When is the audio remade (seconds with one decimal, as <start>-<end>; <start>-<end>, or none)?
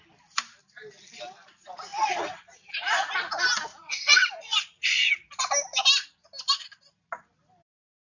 1.9-2.7; 3.7-5.4